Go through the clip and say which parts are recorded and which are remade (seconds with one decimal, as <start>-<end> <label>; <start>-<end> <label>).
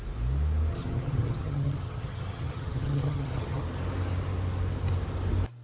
0.0-0.7 recorded; 0.7-3.6 remade; 3.6-5.6 recorded